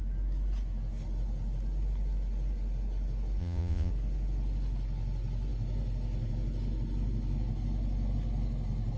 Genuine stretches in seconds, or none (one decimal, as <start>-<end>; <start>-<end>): 0.0-3.4; 3.9-9.0